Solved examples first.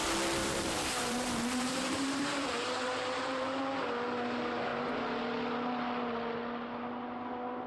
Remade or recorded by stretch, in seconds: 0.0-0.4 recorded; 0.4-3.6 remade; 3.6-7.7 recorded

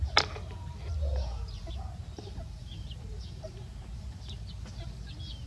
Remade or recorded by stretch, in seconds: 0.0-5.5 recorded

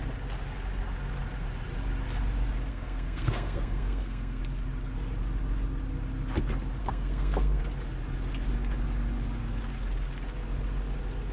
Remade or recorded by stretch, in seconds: 0.0-2.7 recorded; 2.7-4.4 remade; 4.4-6.8 recorded; 6.8-7.6 remade; 7.6-11.3 recorded